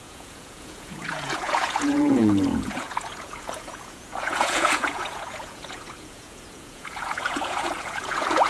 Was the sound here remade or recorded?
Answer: remade